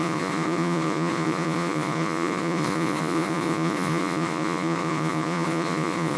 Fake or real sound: fake